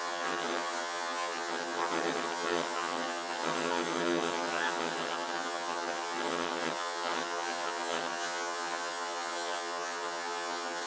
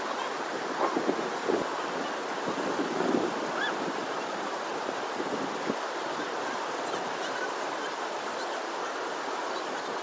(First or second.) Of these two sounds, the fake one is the first